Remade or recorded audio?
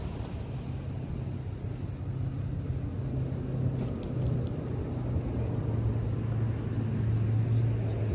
recorded